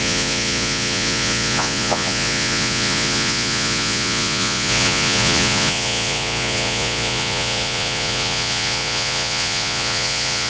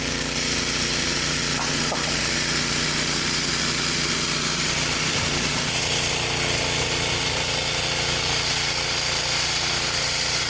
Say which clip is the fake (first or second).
first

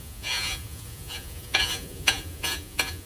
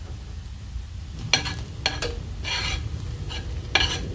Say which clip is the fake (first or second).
first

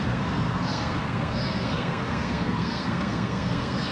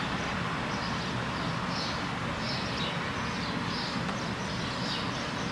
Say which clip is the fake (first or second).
first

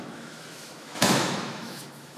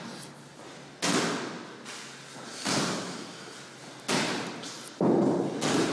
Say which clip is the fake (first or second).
first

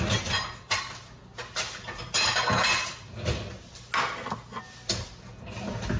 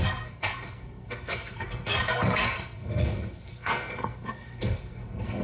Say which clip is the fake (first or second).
second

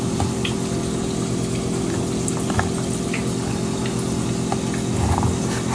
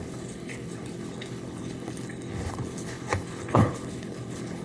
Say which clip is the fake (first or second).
second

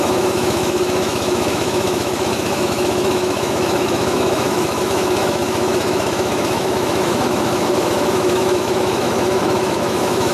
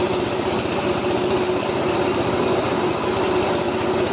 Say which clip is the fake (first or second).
first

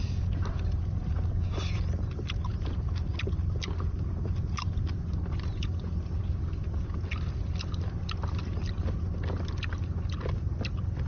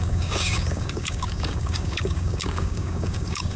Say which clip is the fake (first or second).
second